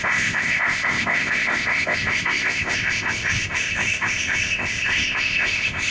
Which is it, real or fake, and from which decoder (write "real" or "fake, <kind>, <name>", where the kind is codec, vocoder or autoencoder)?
fake, codec, ZipCodec